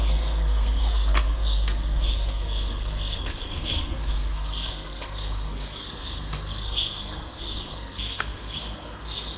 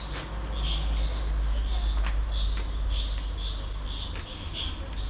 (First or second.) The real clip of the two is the second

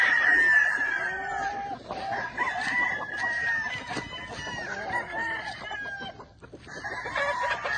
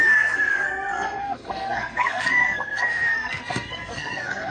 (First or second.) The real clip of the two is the first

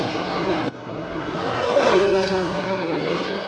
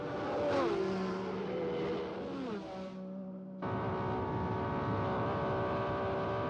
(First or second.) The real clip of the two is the second